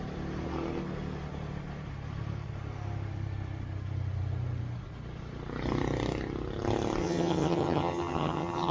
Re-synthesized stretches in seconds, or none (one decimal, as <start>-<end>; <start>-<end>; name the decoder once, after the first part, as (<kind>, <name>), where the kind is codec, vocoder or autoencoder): 7.0-8.7 (vocoder, HiFi-GAN)